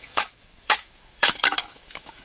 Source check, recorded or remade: remade